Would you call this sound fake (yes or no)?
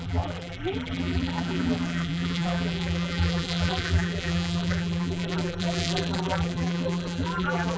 yes